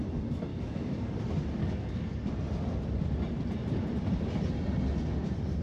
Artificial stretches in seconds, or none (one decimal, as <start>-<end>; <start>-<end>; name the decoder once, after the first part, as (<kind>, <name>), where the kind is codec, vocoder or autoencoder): 0.5-1.2 (codec, DAC); 1.6-2.3